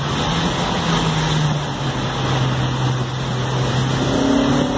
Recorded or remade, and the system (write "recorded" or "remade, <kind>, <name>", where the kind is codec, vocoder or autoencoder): recorded